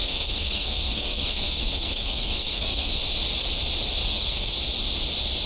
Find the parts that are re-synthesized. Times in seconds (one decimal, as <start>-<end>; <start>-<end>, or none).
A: 0.0-3.0; 4.1-4.5